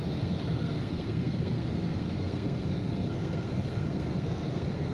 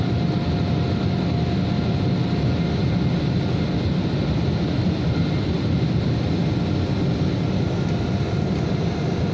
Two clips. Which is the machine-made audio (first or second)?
first